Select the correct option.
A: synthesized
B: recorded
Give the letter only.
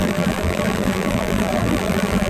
A